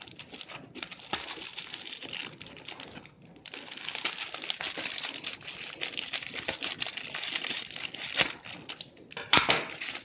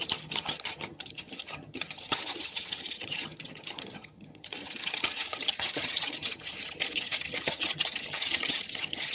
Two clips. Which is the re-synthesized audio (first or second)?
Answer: second